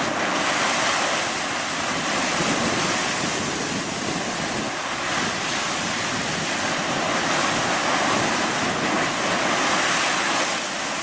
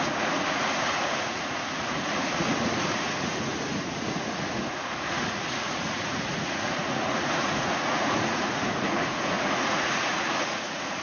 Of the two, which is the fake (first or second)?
second